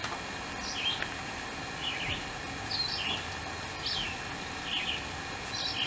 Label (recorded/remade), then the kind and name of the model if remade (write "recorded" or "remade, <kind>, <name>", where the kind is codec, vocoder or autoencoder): recorded